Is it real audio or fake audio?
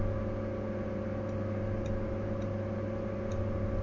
real